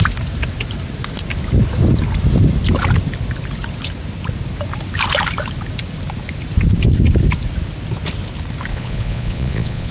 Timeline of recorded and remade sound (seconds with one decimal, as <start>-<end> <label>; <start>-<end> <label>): 0.0-8.7 recorded; 8.7-9.9 remade